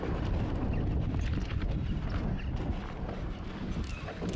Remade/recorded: recorded